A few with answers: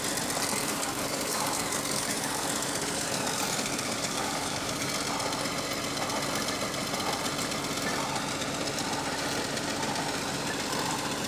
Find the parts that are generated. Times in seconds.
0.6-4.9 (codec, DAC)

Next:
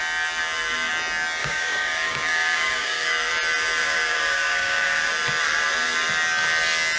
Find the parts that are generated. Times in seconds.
1.4-3.3 (codec, DAC); 3.8-5.1

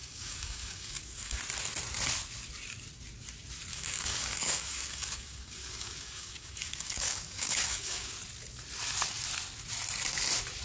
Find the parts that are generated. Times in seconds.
0.0-1.4 (codec, DAC); 3.7-8.1

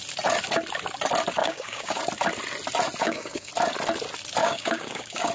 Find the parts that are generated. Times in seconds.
1.4-2.0 (codec, DAC); 3.0-3.5; 4.4-5.3